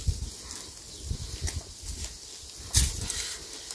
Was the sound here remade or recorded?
recorded